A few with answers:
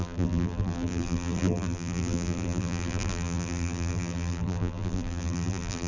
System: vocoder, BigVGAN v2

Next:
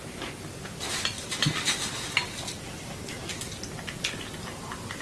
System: none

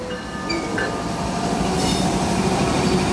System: none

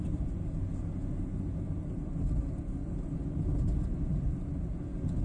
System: none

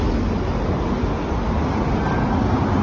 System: none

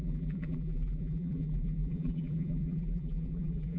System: vocoder, BigVGAN v2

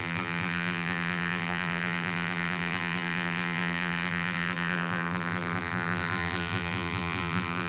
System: vocoder, BigVGAN v2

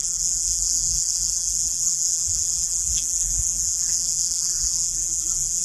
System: vocoder, BigVGAN v2